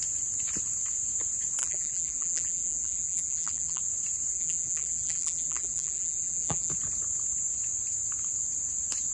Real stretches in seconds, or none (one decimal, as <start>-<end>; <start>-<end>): 0.0-1.6; 3.8-4.3; 6.7-9.1